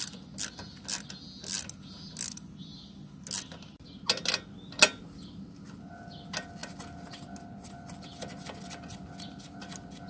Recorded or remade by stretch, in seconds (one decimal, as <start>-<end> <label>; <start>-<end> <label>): 0.0-10.1 recorded

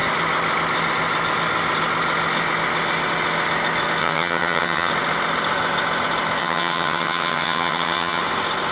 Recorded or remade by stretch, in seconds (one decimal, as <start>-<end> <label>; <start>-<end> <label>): 0.0-4.0 recorded; 4.0-4.9 remade; 4.9-6.4 recorded; 6.4-8.2 remade; 8.2-8.7 recorded

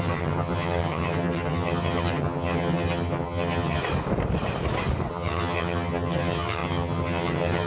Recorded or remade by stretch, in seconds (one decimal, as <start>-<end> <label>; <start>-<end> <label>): 0.0-3.8 remade; 3.8-5.1 recorded; 5.1-7.7 remade

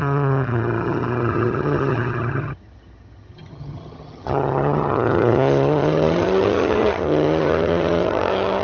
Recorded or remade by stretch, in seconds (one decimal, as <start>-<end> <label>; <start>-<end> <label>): 0.0-8.6 remade